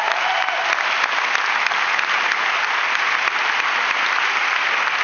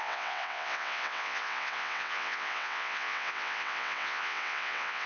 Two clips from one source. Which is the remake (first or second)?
second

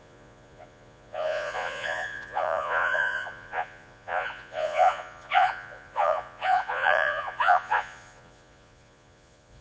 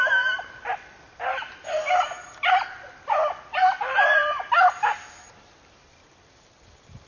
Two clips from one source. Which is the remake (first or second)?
first